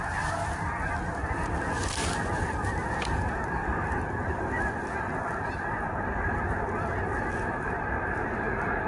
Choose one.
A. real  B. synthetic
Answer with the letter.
A